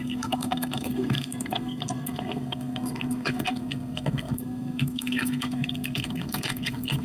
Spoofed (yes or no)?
yes